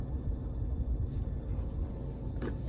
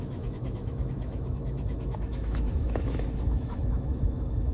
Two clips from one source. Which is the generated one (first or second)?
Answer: second